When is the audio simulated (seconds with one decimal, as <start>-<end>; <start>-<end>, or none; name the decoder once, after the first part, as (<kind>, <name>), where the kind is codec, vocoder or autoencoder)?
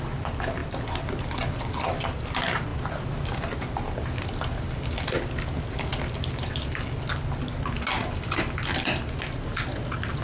none